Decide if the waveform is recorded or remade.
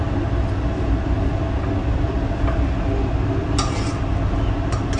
recorded